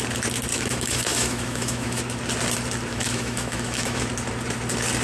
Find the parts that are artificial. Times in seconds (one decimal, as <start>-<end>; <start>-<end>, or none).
0.5-2.0; 2.9-4.0